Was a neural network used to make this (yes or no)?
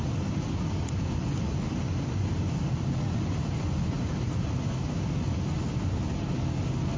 no